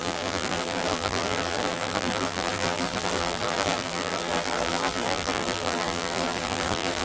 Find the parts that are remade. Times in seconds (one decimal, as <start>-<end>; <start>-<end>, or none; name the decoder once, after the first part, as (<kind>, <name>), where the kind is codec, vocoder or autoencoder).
0.0-7.0 (vocoder, BigVGAN v2)